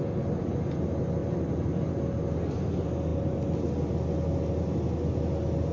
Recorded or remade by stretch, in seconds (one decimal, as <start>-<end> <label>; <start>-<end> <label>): 0.0-5.7 recorded